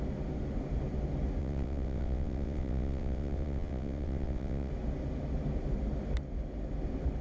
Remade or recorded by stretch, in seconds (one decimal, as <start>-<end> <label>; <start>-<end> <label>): 0.0-1.4 recorded; 1.4-4.7 remade; 4.7-7.2 recorded